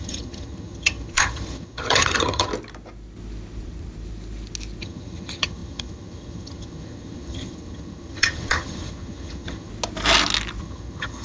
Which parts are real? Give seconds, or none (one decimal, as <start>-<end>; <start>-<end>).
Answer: 2.5-4.8; 9.7-10.6